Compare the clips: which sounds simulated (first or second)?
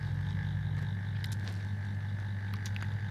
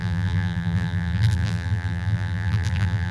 second